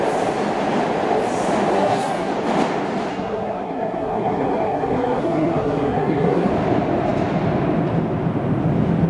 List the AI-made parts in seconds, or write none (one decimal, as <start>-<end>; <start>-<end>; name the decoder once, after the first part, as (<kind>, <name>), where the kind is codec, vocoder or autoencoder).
1.7-2.3 (codec, SNAC); 3.1-6.5